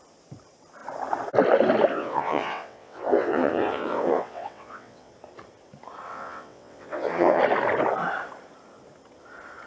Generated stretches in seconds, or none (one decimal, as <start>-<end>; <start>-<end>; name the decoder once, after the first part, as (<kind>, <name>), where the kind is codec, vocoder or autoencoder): 1.9-5.1 (vocoder, WaveNeXt); 6.1-7.4